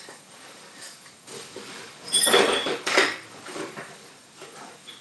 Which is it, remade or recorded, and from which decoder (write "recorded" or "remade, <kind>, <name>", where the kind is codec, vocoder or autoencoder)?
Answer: remade, codec, DAC